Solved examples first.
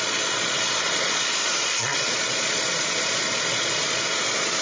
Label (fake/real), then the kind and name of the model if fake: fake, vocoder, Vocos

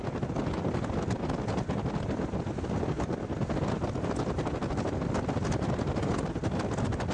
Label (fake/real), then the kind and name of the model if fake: real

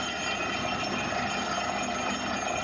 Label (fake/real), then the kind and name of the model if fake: real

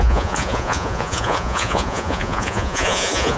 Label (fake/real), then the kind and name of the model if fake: fake, vocoder, Vocos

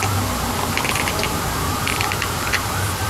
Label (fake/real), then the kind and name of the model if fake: real